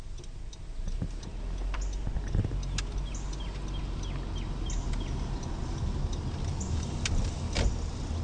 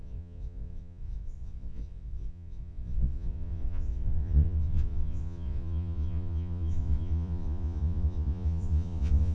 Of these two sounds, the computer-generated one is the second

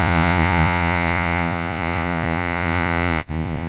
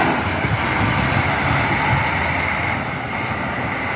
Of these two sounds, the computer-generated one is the first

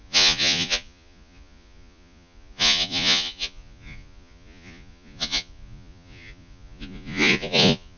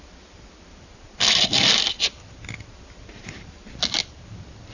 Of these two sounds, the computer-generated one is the first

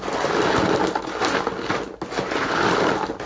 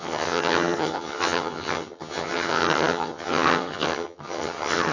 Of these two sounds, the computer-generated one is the second